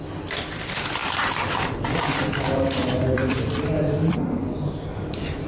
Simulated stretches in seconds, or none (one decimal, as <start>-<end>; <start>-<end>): 0.0-5.5